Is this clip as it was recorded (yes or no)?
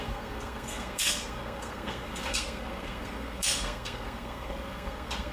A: no